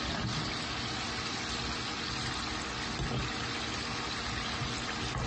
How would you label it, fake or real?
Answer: real